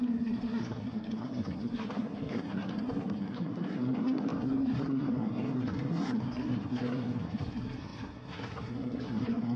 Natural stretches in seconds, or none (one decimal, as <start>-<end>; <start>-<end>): none